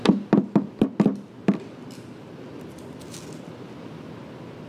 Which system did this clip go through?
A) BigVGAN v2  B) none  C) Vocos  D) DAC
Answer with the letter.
B